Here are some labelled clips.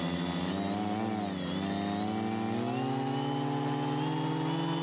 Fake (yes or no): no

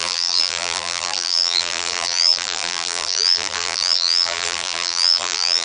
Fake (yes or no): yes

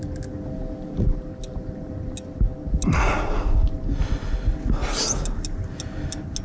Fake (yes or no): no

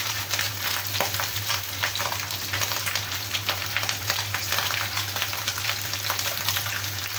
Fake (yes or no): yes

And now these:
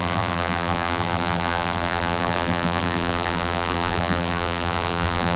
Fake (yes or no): yes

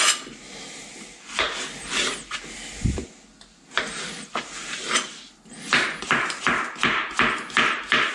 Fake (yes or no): no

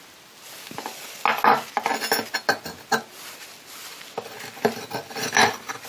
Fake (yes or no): no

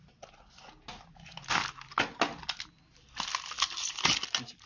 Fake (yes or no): no